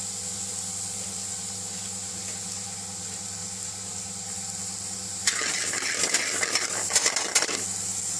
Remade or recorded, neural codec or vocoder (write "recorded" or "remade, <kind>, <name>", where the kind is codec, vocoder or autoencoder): recorded